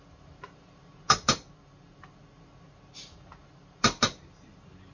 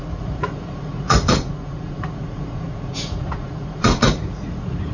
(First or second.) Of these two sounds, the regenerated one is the second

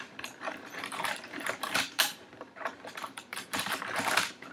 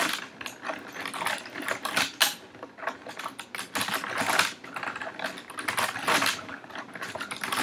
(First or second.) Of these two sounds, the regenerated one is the first